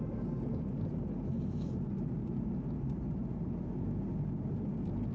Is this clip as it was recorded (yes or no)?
yes